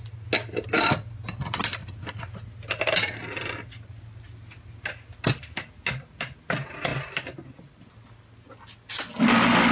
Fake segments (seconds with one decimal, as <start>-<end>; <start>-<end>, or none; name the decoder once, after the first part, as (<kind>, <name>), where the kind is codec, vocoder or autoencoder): none